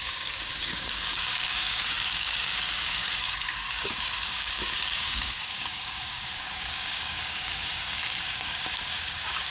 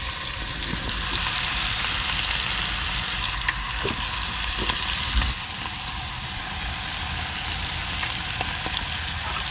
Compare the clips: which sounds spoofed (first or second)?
first